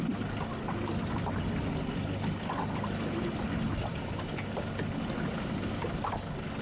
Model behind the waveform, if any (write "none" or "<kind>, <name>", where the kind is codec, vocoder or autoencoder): none